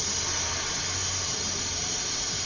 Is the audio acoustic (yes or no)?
yes